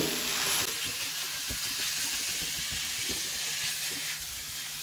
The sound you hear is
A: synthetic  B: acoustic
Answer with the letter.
B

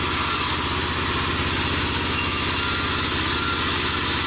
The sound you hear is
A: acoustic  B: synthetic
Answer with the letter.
A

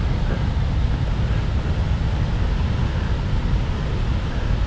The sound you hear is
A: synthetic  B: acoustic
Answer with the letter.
B